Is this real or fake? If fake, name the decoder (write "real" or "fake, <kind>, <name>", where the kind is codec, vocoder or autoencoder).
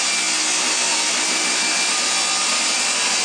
real